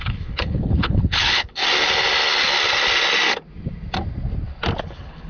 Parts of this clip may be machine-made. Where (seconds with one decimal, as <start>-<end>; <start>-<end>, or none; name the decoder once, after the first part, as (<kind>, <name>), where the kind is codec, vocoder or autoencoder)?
0.0-1.6 (codec, HILCodec); 4.8-5.3